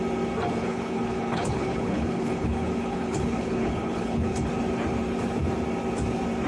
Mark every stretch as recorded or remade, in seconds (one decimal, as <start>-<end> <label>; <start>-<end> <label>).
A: 0.0-0.6 recorded; 0.6-4.5 remade; 4.5-6.5 recorded